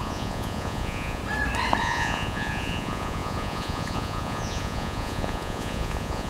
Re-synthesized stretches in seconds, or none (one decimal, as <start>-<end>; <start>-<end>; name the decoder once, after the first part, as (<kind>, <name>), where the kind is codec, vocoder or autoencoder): 0.0-1.2 (vocoder, Vocos); 1.8-6.3